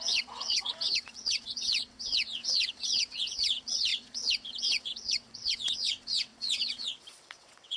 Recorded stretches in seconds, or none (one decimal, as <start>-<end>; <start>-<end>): none